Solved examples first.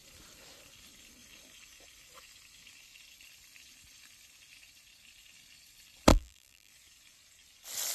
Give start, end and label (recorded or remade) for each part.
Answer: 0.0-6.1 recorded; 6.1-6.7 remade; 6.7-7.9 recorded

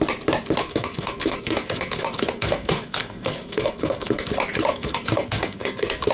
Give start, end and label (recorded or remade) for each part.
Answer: 0.0-0.6 recorded; 0.6-4.3 remade; 4.3-4.7 recorded; 4.7-6.1 remade